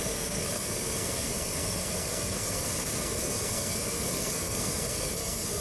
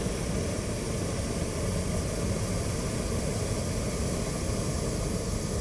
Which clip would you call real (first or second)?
second